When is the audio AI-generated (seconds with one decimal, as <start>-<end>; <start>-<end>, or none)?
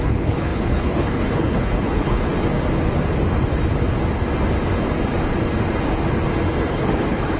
0.0-2.3; 6.7-7.4